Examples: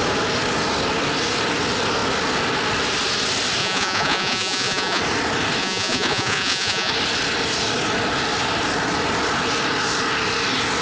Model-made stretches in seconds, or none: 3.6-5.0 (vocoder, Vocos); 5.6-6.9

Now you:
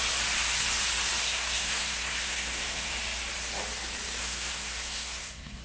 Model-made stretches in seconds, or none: 1.2-2.9 (codec, SNAC); 4.2-5.6